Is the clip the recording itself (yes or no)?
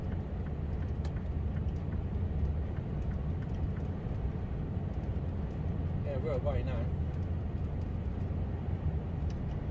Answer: yes